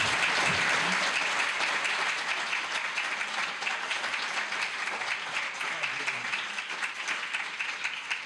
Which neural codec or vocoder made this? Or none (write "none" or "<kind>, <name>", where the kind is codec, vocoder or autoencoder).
none